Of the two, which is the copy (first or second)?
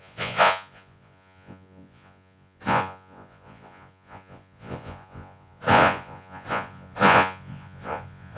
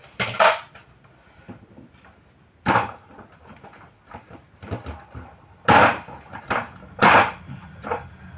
first